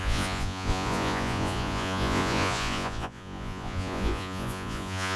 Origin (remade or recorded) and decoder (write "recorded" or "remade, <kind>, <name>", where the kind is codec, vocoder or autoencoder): remade, vocoder, Vocos